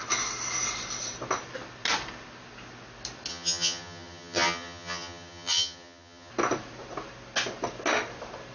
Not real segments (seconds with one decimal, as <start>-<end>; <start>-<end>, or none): 3.3-6.3